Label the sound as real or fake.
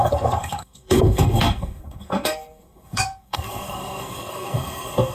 fake